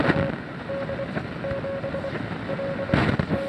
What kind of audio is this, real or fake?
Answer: real